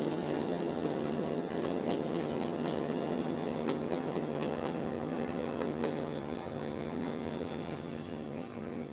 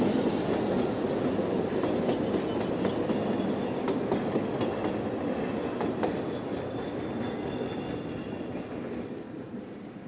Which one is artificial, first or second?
first